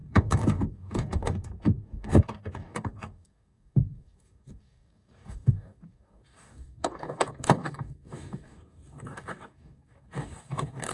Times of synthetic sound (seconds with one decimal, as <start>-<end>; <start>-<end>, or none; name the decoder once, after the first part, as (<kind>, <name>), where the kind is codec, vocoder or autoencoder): 0.0-10.9 (codec, DAC)